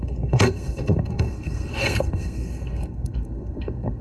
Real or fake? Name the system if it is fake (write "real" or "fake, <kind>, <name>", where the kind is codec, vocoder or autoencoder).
fake, codec, SNAC